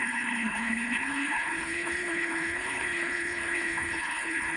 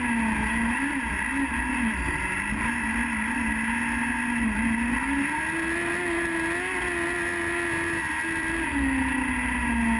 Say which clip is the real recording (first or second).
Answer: second